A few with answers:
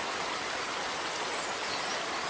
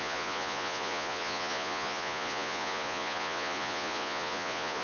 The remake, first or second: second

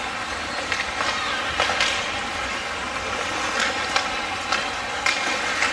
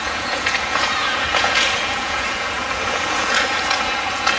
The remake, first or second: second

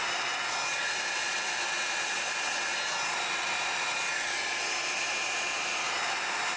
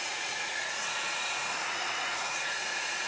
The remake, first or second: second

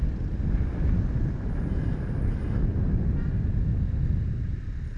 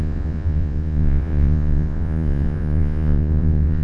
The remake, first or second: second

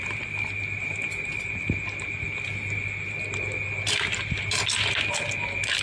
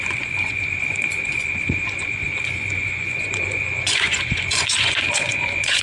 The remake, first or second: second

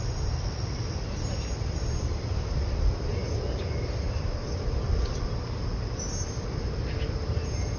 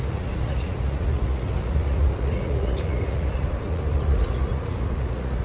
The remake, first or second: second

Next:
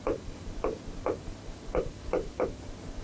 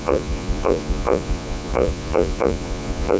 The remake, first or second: second